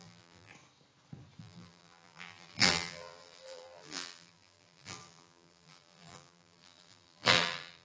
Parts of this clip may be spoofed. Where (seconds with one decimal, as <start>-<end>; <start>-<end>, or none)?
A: 0.0-0.5; 1.4-7.8